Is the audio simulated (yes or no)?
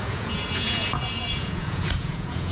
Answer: yes